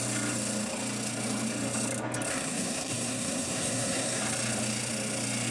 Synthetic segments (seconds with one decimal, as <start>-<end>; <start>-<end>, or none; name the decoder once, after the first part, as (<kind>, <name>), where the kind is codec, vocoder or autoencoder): 2.3-4.2 (codec, SNAC)